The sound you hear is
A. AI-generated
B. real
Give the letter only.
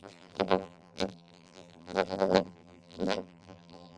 A